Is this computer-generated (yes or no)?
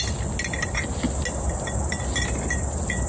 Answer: no